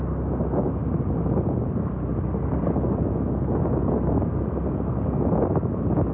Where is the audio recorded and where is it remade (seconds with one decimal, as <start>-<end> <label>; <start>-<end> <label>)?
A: 0.0-6.1 recorded